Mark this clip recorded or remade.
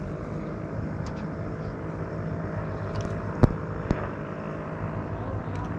recorded